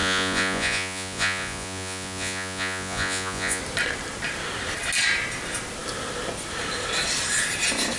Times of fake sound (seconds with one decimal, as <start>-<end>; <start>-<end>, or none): 0.0-3.6

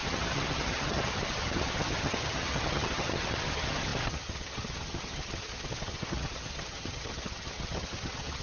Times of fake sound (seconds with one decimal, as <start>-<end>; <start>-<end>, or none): 0.0-8.4

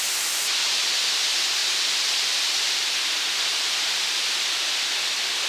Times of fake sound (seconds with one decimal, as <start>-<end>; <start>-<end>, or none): none

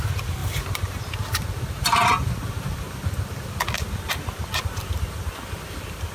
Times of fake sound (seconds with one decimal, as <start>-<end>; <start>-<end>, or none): none

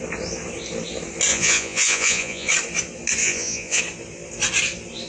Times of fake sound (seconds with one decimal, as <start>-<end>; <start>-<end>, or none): 1.3-2.5; 3.2-3.8